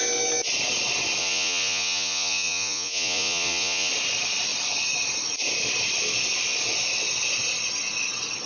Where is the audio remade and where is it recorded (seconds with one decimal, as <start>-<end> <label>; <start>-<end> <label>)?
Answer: 0.0-1.2 recorded; 1.2-3.9 remade; 3.9-8.5 recorded